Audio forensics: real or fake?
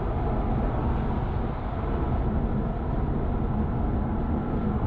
real